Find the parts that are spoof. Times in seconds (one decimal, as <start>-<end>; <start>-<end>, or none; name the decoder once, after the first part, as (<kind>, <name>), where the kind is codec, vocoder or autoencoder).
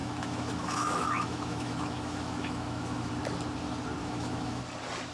0.0-3.1 (autoencoder, DAC-VAE); 4.0-4.6